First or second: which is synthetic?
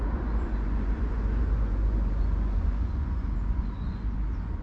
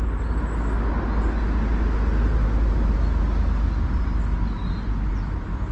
first